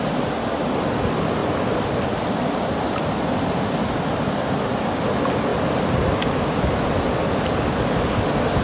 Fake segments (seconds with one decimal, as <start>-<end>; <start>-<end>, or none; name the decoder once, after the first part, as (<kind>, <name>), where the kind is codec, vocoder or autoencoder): none